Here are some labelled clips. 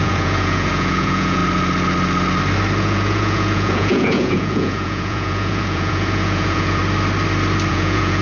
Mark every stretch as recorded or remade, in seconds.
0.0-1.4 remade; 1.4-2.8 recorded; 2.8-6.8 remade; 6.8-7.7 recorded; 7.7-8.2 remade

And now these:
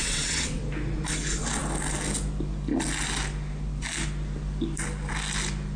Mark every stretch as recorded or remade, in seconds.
0.0-0.6 remade; 0.6-5.8 recorded

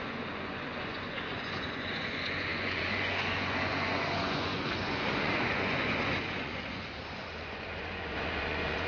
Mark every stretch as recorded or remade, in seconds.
0.0-8.9 remade

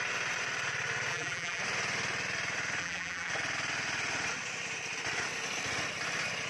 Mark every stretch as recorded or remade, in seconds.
0.0-1.1 recorded; 1.1-1.6 remade; 1.6-2.8 recorded; 2.8-3.3 remade; 3.3-6.5 recorded

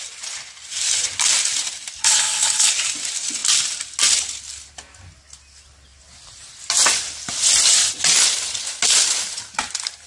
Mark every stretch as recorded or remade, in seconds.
0.0-2.0 recorded; 2.0-2.7 remade; 2.7-10.1 recorded

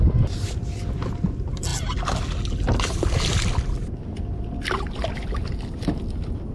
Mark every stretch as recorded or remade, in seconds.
0.0-6.5 recorded

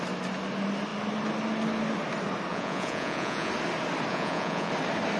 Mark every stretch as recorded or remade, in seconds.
0.0-2.5 recorded; 2.5-3.5 remade; 3.5-4.1 recorded; 4.1-4.7 remade; 4.7-5.2 recorded

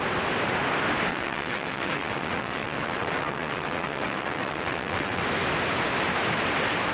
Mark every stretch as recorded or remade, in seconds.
0.0-1.1 recorded; 1.1-5.2 remade; 5.2-6.9 recorded